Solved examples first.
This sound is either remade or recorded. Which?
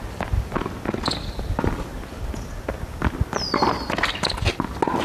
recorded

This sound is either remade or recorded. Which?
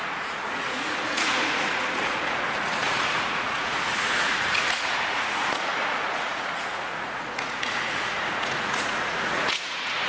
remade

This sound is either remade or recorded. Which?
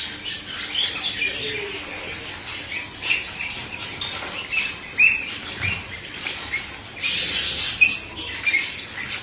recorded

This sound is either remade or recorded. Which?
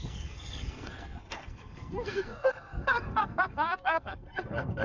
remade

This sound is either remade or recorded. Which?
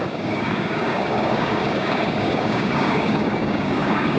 remade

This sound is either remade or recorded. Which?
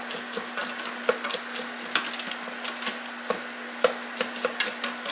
recorded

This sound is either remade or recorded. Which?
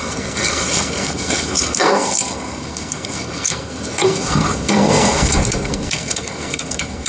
remade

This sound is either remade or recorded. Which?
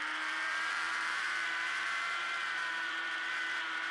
remade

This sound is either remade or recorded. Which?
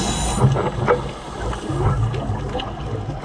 recorded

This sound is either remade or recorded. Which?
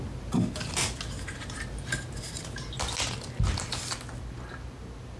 recorded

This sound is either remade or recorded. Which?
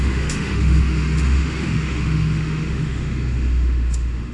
remade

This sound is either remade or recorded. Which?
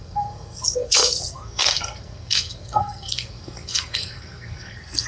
remade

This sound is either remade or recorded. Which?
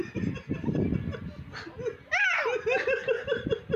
recorded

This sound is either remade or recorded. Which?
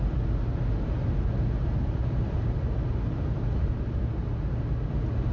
recorded